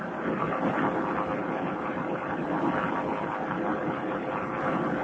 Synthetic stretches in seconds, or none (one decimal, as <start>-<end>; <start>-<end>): 1.4-2.9; 3.7-4.3